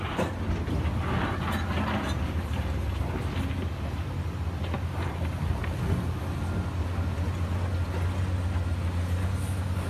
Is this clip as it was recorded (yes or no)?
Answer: yes